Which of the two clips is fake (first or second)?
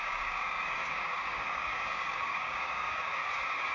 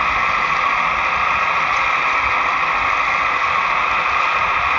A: first